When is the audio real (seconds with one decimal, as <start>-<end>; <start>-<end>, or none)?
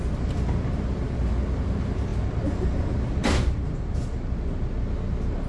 0.0-5.5